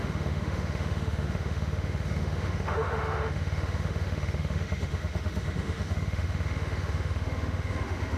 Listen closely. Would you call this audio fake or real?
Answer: fake